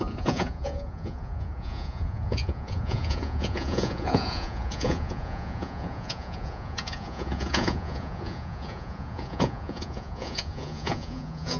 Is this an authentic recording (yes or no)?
no